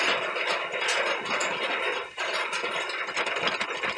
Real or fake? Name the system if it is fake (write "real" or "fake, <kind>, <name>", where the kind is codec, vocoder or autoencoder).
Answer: real